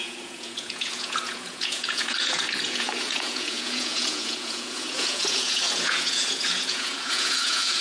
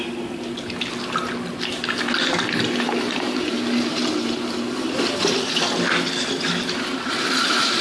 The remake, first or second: first